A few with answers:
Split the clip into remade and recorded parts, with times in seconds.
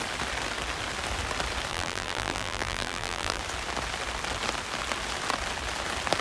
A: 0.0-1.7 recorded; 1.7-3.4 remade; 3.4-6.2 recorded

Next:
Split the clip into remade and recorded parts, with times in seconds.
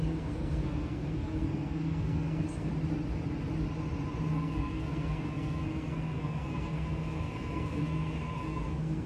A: 0.0-2.7 remade; 2.7-4.3 recorded; 4.3-9.1 remade